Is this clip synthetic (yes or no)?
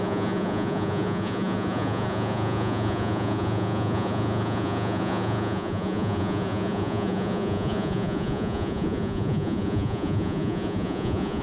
yes